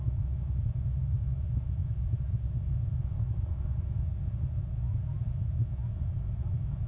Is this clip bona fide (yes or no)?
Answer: yes